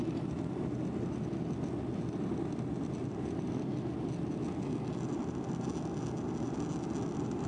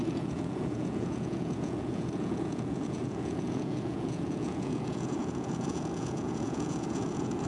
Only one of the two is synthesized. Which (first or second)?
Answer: second